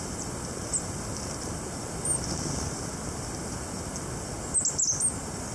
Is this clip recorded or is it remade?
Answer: recorded